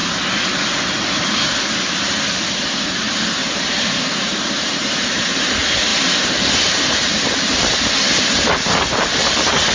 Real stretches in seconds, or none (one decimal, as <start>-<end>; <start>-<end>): 0.0-3.4; 5.5-5.9; 8.2-9.7